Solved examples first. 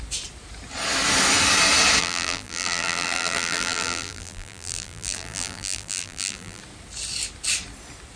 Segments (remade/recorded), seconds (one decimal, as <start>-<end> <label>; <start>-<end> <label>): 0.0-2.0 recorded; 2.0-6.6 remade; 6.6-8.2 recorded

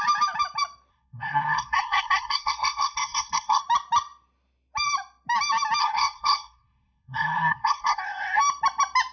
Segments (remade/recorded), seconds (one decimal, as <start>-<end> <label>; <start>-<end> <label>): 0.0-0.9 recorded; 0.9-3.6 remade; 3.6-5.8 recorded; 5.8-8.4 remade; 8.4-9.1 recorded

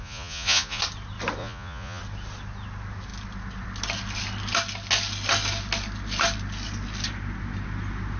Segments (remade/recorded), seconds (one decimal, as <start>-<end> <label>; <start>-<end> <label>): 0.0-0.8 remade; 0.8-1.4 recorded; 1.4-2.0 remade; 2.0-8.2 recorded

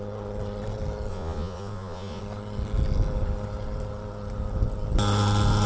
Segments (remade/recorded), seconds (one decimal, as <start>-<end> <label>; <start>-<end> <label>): 0.0-1.1 recorded; 1.1-2.2 remade; 2.2-5.7 recorded

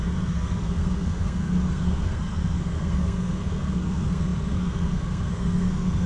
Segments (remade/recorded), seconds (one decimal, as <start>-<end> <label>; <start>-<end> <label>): 0.0-6.1 remade

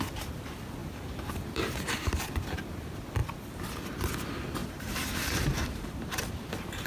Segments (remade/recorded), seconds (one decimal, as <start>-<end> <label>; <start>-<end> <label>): 0.0-0.8 recorded; 0.8-1.8 remade; 1.8-4.6 recorded; 4.6-6.5 remade; 6.5-6.9 recorded

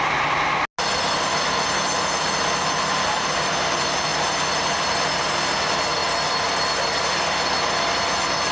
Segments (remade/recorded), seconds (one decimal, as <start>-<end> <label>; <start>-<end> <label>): 0.0-8.5 recorded

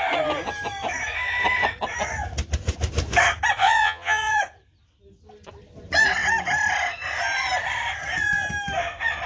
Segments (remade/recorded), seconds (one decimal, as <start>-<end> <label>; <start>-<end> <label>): 0.0-3.6 recorded; 3.6-4.4 remade; 4.4-9.3 recorded